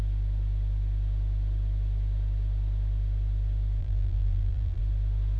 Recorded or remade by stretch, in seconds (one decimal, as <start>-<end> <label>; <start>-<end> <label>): 0.0-3.8 recorded; 3.8-4.8 remade; 4.8-5.4 recorded